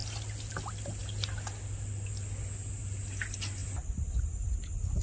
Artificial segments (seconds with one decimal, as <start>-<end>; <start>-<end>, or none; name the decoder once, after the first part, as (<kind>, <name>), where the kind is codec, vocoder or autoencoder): 3.6-4.2 (vocoder, BigVGAN v2)